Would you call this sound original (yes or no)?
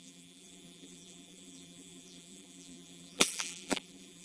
no